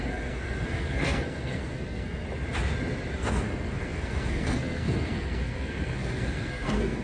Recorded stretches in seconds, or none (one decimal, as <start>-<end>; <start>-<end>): 2.2-3.1